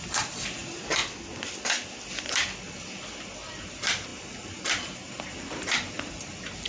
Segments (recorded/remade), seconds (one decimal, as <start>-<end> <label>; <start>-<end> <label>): 0.0-1.0 remade; 1.0-1.9 recorded; 1.9-4.1 remade; 4.1-6.1 recorded; 6.1-6.7 remade